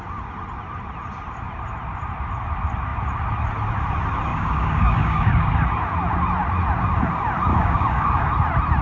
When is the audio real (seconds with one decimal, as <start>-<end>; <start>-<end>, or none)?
0.0-4.3; 5.8-7.5; 8.3-8.8